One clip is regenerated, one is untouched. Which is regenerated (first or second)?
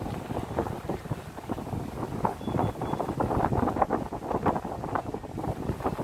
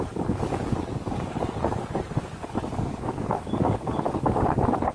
second